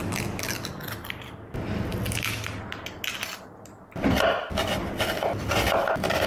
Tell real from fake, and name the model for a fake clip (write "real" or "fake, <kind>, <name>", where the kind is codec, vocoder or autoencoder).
real